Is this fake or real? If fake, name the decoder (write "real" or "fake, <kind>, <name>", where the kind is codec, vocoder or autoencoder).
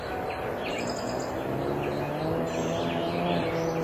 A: real